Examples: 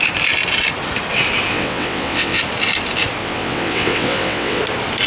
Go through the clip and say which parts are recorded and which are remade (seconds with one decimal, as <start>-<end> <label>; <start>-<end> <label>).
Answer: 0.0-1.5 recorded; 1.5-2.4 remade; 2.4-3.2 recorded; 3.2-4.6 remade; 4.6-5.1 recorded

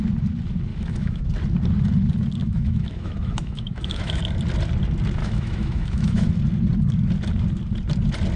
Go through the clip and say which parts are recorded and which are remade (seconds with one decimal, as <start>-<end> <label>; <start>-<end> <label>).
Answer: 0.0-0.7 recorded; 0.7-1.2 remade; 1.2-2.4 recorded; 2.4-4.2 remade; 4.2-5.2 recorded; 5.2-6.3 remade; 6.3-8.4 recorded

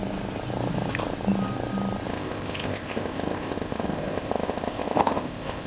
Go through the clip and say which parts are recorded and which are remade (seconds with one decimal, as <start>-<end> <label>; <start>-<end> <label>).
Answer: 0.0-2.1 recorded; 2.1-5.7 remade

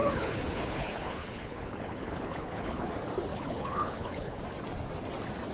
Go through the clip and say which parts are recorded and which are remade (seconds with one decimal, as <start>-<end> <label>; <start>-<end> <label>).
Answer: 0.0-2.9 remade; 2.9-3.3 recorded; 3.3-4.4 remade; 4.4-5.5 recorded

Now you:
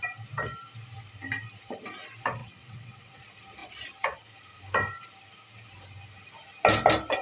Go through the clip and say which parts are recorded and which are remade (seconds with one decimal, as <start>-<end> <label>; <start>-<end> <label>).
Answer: 0.0-2.4 recorded; 2.4-3.2 remade; 3.2-7.2 recorded

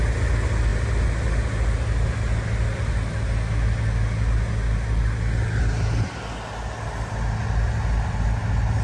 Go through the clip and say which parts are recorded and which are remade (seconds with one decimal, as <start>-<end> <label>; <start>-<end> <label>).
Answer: 0.0-8.8 recorded

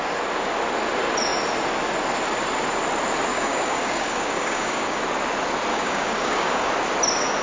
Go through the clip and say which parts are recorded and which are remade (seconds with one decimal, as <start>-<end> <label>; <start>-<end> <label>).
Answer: 0.0-3.3 recorded; 3.3-5.0 remade; 5.0-5.7 recorded; 5.7-6.7 remade; 6.7-7.4 recorded

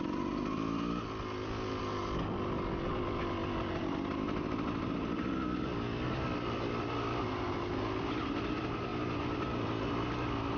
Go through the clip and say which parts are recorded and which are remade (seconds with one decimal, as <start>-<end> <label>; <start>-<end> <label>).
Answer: 0.0-10.6 recorded